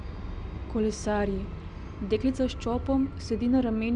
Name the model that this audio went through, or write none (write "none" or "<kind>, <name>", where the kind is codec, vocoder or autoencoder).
none